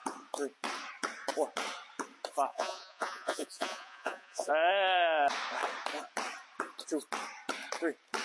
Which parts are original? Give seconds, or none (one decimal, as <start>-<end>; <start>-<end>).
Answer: 0.0-2.5; 4.5-8.2

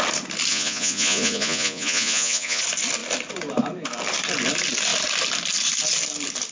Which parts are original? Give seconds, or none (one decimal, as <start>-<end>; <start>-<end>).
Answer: 0.0-0.5; 2.6-6.5

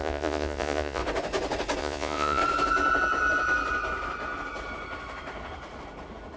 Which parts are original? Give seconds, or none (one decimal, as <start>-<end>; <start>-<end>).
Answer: 1.0-1.8; 2.4-6.4

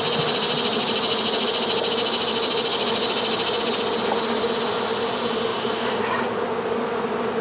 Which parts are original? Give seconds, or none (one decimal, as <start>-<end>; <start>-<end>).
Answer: 0.0-0.7; 1.5-5.5; 6.4-7.4